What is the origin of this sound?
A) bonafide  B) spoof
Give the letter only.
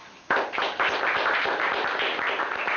A